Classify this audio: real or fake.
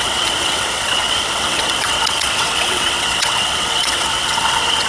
fake